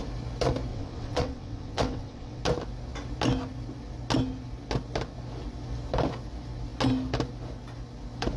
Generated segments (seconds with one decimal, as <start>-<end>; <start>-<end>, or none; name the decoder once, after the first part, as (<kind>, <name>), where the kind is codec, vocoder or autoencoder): 0.7-2.4 (vocoder, WaveNeXt)